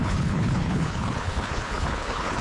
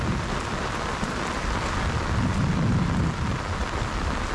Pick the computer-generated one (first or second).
first